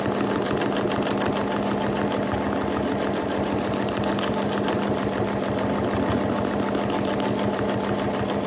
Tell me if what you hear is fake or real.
real